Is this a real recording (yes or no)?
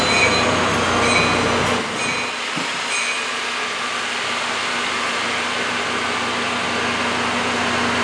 yes